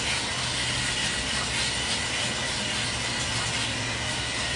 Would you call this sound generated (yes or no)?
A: no